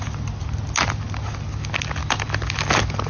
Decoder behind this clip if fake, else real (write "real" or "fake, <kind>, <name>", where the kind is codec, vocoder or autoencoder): real